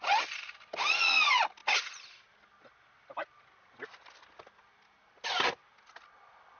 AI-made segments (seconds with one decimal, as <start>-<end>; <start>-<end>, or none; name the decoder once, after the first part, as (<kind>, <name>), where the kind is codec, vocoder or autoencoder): none